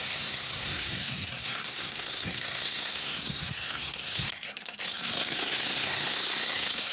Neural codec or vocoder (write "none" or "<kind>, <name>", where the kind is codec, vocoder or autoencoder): codec, SNAC